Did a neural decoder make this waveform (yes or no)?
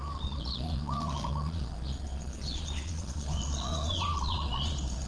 yes